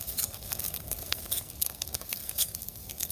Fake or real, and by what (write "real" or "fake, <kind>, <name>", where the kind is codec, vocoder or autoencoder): fake, codec, SNAC